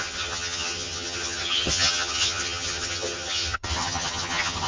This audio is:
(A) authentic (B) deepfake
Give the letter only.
B